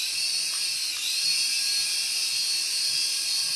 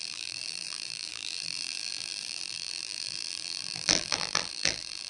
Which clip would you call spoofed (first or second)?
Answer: second